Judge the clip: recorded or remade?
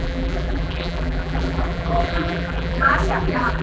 remade